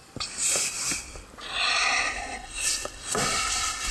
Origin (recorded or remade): recorded